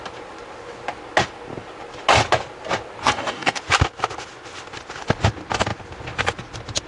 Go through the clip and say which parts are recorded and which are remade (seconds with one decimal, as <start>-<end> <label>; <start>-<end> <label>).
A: 0.0-3.0 recorded; 3.0-3.6 remade; 3.6-6.9 recorded

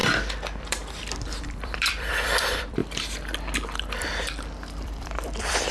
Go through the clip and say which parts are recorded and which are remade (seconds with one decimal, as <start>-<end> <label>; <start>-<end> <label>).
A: 0.0-2.8 remade; 2.8-4.0 recorded; 4.0-5.7 remade

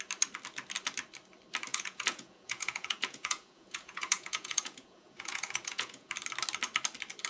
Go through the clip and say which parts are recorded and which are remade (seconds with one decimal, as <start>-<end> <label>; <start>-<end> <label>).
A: 0.0-1.7 recorded; 1.7-6.1 remade; 6.1-7.3 recorded

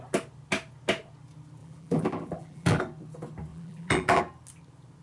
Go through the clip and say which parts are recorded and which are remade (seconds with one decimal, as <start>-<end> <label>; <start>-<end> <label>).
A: 0.0-1.6 recorded; 1.6-2.8 remade; 2.8-3.5 recorded; 3.5-4.2 remade; 4.2-5.0 recorded

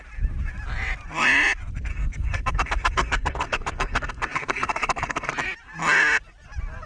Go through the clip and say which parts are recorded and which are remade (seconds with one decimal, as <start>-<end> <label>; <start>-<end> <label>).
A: 0.0-1.9 recorded; 1.9-5.3 remade; 5.3-6.9 recorded

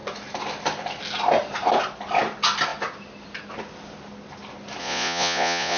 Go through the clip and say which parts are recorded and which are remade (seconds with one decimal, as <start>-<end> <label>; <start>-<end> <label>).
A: 0.0-4.8 recorded; 4.8-5.8 remade